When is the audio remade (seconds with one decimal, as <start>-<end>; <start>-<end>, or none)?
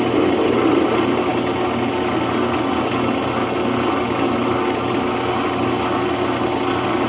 none